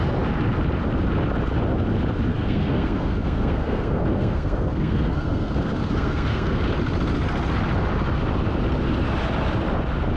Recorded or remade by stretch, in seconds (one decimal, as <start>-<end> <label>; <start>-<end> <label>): 0.0-2.3 recorded; 2.3-6.6 remade; 6.6-10.2 recorded